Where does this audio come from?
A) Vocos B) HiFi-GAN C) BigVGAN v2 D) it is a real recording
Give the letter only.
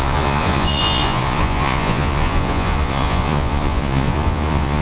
A